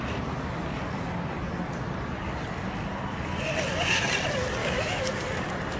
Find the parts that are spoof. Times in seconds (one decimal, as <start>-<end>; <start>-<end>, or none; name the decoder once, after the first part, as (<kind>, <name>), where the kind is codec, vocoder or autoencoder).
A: 4.6-5.1 (autoencoder, DAC-VAE)

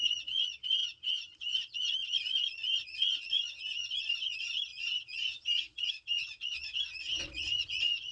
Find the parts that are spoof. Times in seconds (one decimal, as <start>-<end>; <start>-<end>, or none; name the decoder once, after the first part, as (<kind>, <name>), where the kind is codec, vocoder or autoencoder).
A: 0.0-8.1 (vocoder, Vocos)